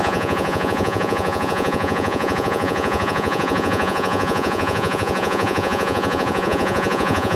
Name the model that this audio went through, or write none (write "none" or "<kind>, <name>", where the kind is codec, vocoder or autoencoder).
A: vocoder, Vocos